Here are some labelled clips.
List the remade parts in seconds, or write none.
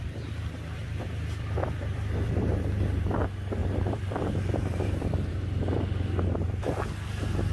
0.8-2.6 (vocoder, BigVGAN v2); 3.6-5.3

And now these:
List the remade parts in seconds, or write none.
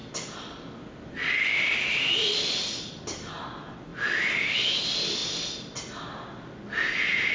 0.0-3.3 (vocoder, BigVGAN v2); 3.9-4.8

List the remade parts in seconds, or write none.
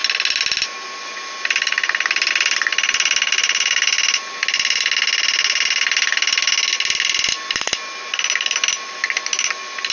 none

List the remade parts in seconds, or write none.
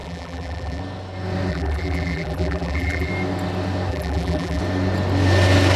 0.0-0.8 (vocoder, BigVGAN v2); 1.5-3.1; 3.9-4.6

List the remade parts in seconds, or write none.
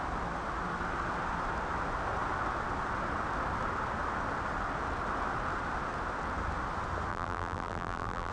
7.1-8.3 (vocoder, BigVGAN v2)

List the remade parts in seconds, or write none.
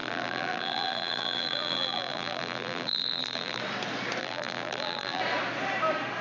0.0-3.6 (vocoder, BigVGAN v2); 4.2-5.2